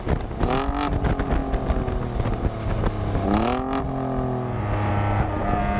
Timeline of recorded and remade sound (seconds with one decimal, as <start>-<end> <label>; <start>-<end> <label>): 0.0-5.8 recorded